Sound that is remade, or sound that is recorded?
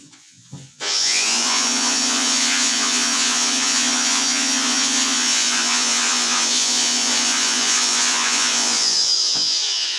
remade